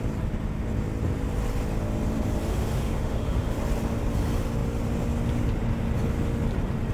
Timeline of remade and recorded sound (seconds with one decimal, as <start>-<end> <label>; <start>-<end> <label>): 0.0-2.5 recorded; 2.5-3.6 remade; 3.6-6.9 recorded